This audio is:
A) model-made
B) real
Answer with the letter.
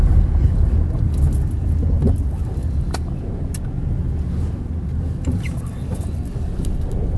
B